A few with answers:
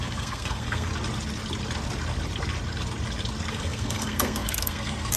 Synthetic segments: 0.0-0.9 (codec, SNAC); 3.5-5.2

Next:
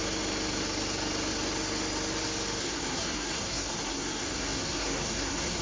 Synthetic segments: 2.6-5.6 (codec, SNAC)